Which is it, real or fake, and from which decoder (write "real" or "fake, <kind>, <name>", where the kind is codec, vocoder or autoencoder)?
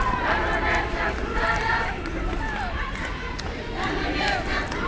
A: real